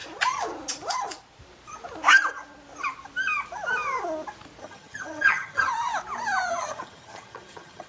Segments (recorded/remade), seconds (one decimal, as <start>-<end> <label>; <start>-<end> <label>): 0.0-4.6 recorded; 4.6-5.7 remade; 5.7-6.5 recorded; 6.5-7.9 remade